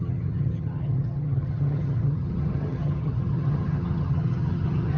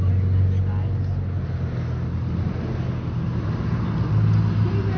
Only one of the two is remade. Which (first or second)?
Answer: first